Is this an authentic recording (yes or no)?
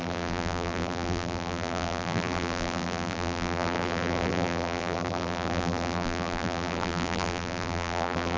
no